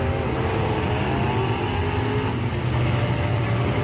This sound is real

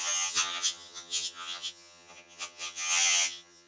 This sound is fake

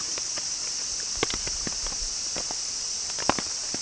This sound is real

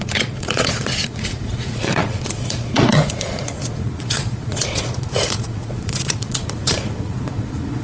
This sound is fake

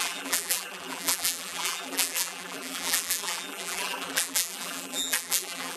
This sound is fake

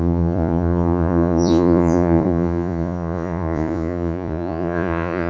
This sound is fake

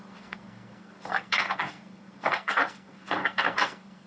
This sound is fake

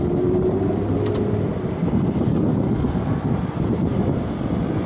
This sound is real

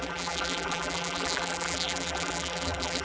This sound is fake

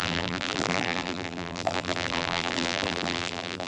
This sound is fake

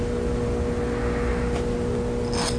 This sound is real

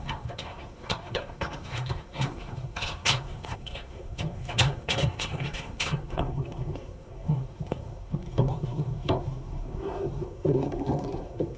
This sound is fake